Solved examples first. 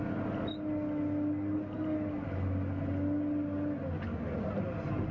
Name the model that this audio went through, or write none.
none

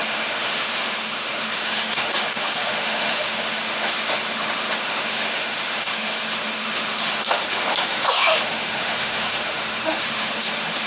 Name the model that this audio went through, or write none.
autoencoder, DAC-VAE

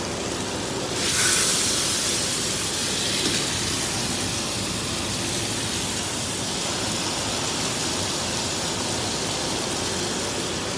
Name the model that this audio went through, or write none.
none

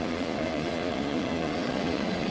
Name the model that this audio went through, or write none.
vocoder, Vocos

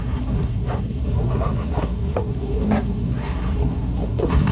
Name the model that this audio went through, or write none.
codec, SNAC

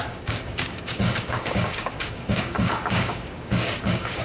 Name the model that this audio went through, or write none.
codec, DAC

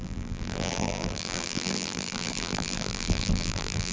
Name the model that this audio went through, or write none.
vocoder, BigVGAN v2